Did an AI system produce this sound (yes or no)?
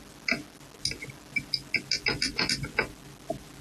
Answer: no